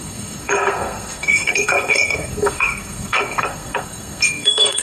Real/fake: fake